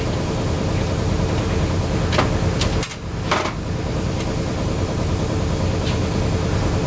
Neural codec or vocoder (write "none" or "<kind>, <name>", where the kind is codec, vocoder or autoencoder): none